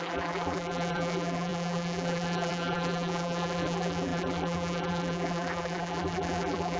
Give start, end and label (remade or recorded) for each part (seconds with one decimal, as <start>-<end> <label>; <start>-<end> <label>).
0.0-6.8 remade